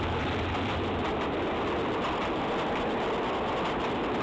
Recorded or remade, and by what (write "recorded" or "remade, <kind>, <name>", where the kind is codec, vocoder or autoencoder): recorded